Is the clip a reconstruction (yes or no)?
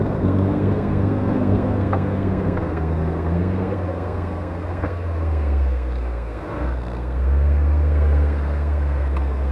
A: yes